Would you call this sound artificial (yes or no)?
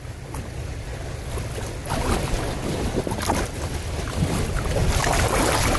no